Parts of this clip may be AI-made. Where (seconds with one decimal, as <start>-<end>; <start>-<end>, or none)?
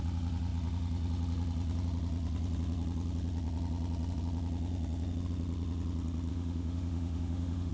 6.3-7.7